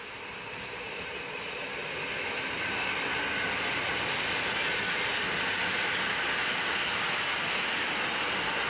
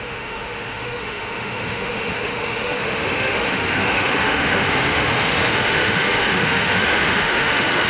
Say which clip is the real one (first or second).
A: first